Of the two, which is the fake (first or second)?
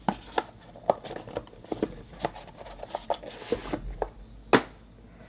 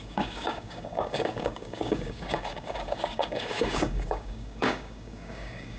second